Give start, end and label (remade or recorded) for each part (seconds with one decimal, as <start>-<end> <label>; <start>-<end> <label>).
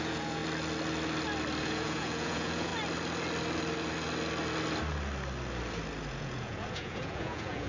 0.0-0.4 remade; 0.4-1.6 recorded; 1.6-2.7 remade; 2.7-6.1 recorded; 6.1-7.7 remade